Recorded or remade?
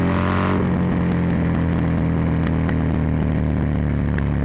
recorded